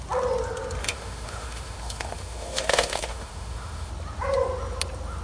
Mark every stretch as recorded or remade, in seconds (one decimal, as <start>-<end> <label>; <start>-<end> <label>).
0.0-0.8 recorded; 0.8-3.9 remade; 3.9-5.2 recorded